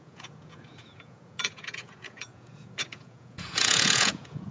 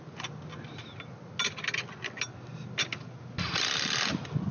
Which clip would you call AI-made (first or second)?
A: first